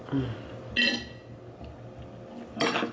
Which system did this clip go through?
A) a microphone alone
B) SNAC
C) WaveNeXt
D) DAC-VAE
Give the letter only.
A